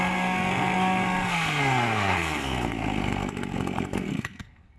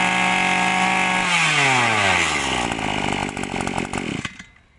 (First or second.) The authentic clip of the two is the second